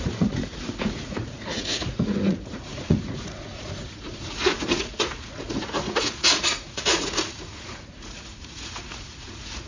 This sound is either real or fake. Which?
fake